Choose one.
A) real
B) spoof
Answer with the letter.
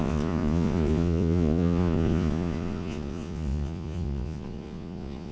B